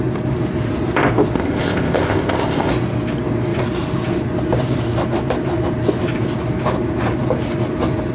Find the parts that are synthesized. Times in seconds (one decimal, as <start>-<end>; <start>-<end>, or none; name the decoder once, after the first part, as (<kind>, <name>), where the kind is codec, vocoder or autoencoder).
1.4-2.7 (codec, ZipCodec)